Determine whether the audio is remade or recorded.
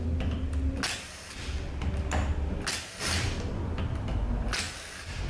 recorded